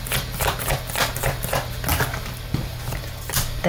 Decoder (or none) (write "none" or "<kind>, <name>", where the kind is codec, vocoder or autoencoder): none